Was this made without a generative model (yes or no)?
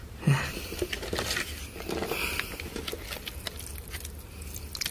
yes